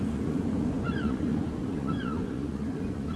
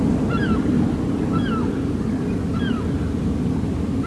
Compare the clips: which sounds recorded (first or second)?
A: second